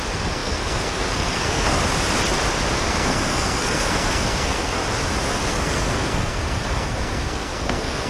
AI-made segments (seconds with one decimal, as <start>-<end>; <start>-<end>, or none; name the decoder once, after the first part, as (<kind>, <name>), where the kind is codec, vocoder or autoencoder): 0.0-1.8 (codec, SNAC); 2.8-4.8; 5.4-8.1